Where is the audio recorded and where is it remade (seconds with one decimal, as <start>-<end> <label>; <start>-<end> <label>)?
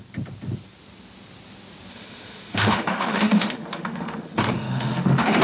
0.0-1.9 recorded; 1.9-5.4 remade